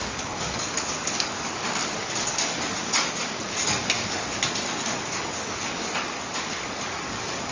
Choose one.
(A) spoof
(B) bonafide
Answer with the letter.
A